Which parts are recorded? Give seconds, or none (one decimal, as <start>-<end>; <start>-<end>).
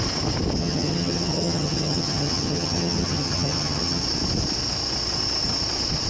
0.0-0.6; 4.0-6.1